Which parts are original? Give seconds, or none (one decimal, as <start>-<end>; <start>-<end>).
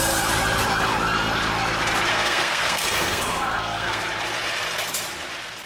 0.0-2.1; 4.0-5.7